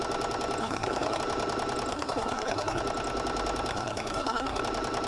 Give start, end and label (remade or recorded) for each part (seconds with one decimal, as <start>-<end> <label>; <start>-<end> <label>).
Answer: 0.0-0.6 recorded; 0.6-1.2 remade; 1.2-1.9 recorded; 1.9-2.8 remade; 2.8-3.7 recorded; 3.7-4.6 remade; 4.6-5.1 recorded